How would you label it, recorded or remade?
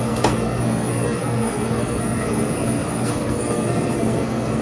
remade